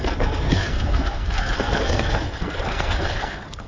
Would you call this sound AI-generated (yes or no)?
yes